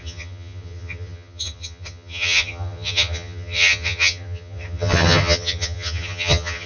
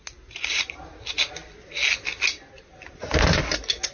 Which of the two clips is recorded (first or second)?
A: second